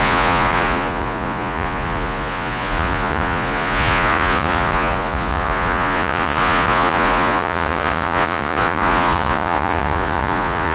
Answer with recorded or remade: remade